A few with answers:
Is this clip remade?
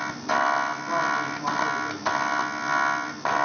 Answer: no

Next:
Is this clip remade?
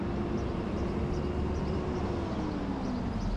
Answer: no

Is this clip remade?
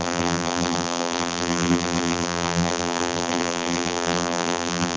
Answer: yes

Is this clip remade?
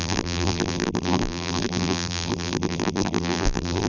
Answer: yes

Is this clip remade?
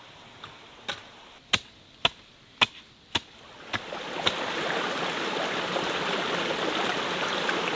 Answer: no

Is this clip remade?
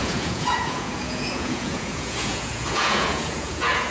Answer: yes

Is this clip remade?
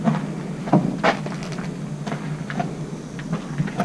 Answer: no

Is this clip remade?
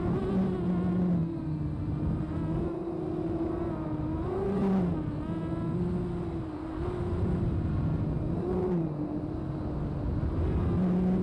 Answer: no